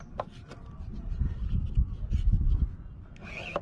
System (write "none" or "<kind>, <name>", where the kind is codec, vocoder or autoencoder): none